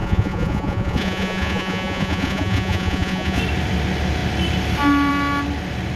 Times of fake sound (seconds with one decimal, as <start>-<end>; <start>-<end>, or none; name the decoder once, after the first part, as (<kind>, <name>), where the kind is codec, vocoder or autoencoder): 0.0-3.4 (vocoder, Vocos)